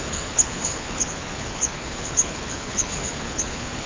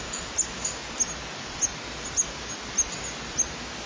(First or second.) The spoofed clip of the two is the first